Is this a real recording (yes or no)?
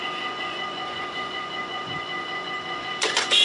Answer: no